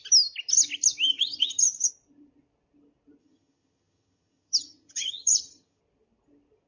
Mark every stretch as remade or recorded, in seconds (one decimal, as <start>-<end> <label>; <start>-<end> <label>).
0.0-1.1 recorded; 1.1-1.9 remade; 1.9-3.2 recorded; 3.2-5.8 remade; 5.8-6.7 recorded